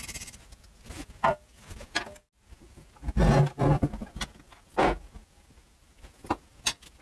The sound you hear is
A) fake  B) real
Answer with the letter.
B